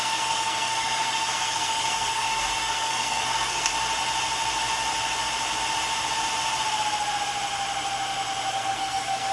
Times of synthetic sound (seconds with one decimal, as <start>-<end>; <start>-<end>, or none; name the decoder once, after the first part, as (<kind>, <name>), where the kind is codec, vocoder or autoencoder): 0.0-3.7 (codec, SNAC); 8.5-9.3